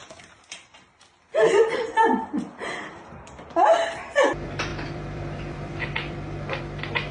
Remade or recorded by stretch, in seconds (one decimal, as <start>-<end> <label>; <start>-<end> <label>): 0.0-4.3 remade; 4.3-4.7 recorded; 4.7-6.6 remade; 6.6-7.1 recorded